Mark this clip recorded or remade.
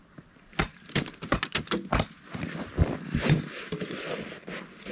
recorded